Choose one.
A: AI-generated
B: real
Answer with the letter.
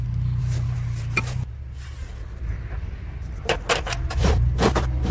B